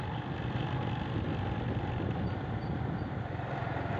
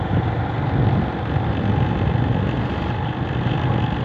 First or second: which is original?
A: second